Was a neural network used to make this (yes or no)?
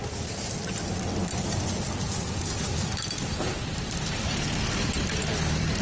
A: no